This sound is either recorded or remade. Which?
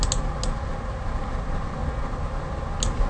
recorded